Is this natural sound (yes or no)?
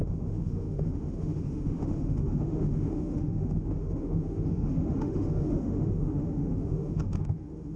no